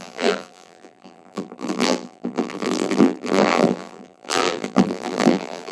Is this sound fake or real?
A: fake